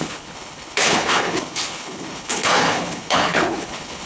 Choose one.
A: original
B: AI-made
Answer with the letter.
B